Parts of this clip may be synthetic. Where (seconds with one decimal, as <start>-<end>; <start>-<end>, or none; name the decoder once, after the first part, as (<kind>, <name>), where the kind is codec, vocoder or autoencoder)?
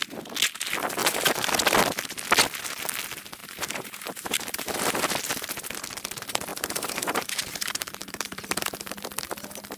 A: 1.0-1.5 (vocoder, BigVGAN v2); 3.4-5.0; 6.5-8.9